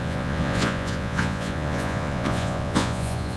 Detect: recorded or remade remade